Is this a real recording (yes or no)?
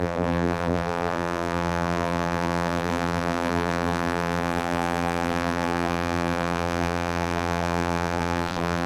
no